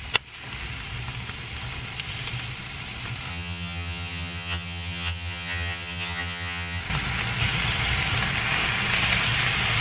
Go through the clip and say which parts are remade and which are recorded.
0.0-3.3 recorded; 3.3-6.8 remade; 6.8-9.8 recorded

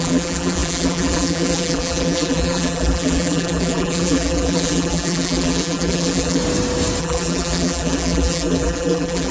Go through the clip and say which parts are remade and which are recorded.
0.0-6.4 remade; 6.4-7.0 recorded; 7.0-9.3 remade

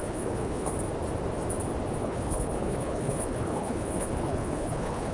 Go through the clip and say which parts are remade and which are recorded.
0.0-0.7 remade; 0.7-2.0 recorded; 2.0-5.1 remade